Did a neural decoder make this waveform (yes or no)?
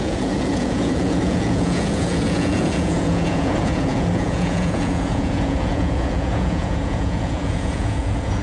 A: yes